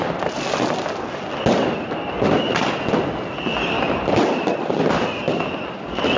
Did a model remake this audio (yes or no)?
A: no